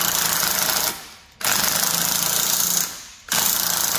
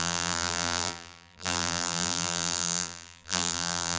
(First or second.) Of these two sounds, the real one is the first